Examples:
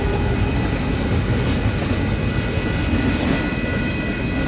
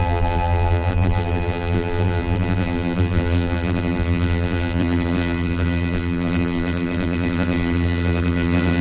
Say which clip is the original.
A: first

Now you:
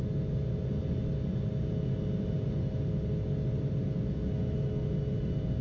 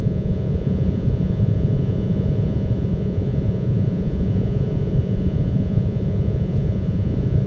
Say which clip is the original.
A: first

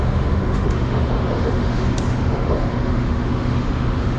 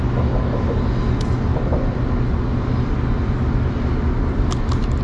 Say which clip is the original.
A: second